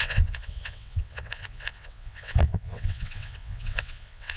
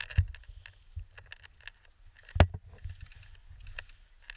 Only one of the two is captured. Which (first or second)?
second